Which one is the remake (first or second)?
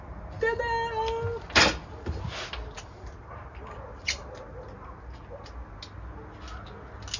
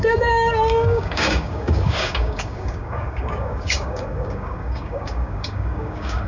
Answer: second